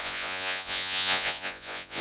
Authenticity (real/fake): fake